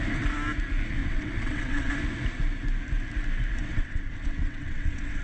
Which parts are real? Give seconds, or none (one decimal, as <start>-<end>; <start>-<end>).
0.0-1.0; 1.9-3.6

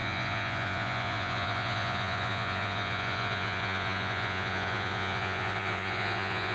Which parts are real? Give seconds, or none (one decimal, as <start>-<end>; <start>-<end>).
none

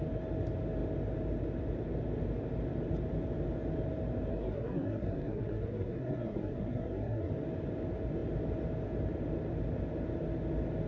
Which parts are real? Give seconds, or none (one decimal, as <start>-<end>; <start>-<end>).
0.0-4.3; 7.3-10.9

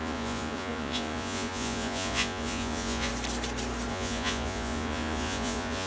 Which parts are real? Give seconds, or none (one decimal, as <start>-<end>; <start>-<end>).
3.1-3.9

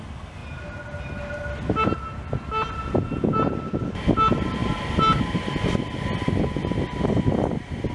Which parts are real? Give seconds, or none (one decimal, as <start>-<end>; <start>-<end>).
0.0-7.9

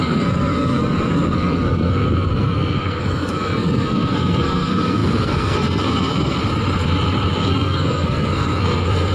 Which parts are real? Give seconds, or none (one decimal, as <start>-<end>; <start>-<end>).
6.4-7.3

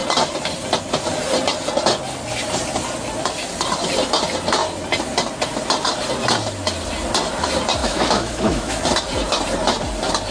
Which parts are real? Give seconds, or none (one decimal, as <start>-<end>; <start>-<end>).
0.0-7.8; 8.8-10.3

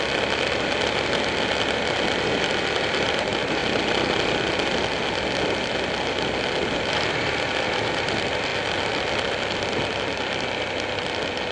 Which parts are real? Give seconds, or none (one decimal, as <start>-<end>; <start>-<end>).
0.0-11.5